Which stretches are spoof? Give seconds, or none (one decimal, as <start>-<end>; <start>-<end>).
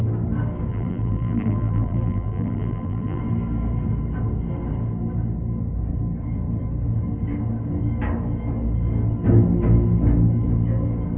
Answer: 0.7-3.2